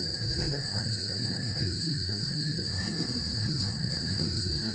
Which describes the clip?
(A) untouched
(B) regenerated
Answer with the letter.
B